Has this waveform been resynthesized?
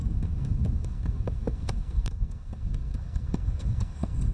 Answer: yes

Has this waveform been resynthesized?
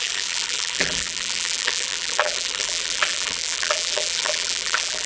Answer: yes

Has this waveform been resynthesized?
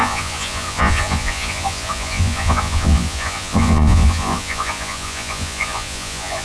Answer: yes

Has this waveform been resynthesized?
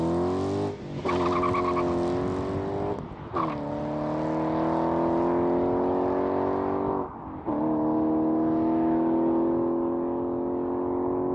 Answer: no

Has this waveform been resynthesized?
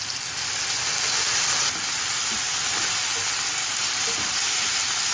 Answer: no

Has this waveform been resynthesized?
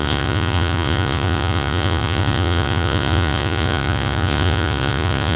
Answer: yes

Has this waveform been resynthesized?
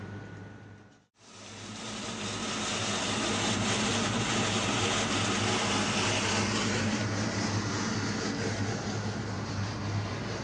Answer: no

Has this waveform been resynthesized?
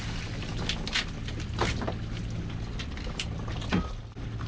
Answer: no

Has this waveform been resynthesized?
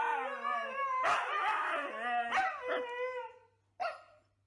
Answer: no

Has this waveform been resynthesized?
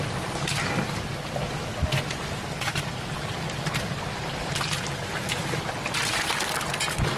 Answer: no